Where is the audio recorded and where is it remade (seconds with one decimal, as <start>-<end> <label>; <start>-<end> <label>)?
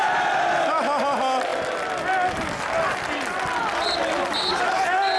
0.0-5.2 recorded